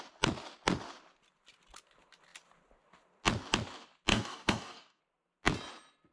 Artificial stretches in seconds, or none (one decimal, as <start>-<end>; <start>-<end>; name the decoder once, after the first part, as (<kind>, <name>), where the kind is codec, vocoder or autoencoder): 4.1-5.0 (codec, DAC)